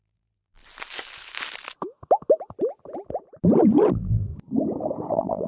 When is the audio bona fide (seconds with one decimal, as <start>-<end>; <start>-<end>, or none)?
0.6-3.9; 4.3-5.1